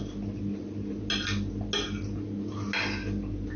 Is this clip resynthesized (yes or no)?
no